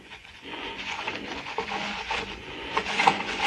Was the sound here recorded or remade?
remade